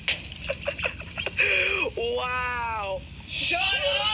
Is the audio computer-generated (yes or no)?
no